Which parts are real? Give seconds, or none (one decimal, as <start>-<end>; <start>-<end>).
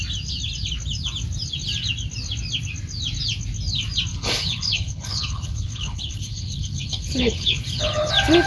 0.0-4.1; 8.1-8.5